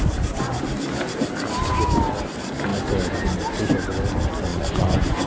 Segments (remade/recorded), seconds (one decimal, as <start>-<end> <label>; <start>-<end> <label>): 0.0-4.5 recorded; 4.5-5.3 remade